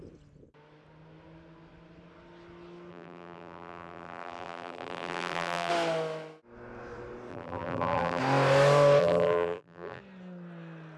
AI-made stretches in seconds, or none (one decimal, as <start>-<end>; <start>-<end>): 2.9-5.7; 7.3-8.2; 9.0-10.0